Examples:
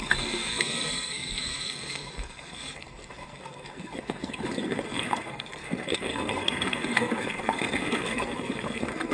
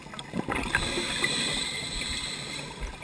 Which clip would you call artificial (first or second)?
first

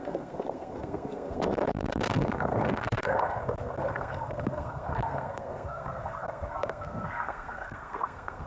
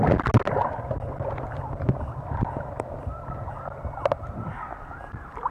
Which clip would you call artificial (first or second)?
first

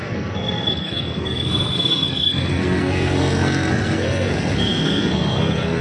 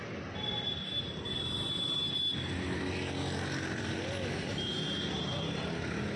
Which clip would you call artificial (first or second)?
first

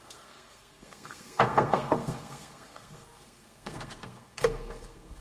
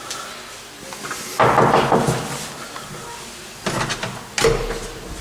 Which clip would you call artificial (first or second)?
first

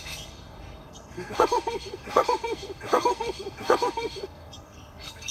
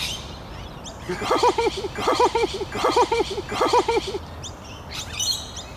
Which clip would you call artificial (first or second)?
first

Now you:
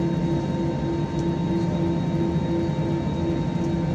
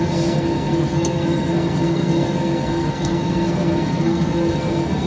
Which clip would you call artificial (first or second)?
second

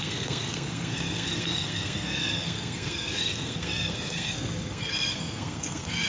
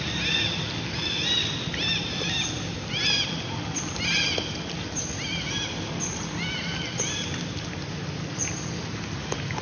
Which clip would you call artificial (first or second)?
first